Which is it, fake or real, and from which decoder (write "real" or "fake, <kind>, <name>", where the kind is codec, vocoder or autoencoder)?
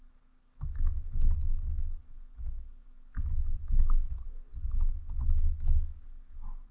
fake, autoencoder, DAC-VAE